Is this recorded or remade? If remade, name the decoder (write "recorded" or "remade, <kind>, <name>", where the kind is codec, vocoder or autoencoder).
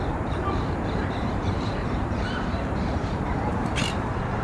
remade, vocoder, BigVGAN v2